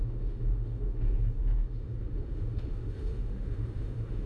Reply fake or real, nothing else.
fake